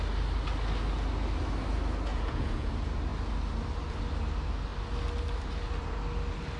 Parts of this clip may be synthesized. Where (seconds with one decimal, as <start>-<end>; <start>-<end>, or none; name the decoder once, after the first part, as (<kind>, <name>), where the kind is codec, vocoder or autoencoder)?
2.1-2.7 (vocoder, Vocos)